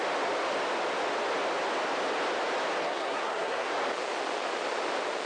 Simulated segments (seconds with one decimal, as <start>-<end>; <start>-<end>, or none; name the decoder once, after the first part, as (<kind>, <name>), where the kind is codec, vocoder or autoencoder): 2.8-3.7 (codec, SNAC)